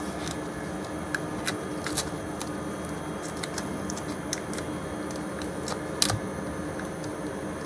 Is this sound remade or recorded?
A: recorded